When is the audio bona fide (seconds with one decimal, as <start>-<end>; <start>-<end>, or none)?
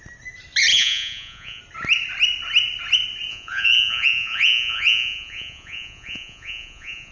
0.0-0.7; 1.6-3.3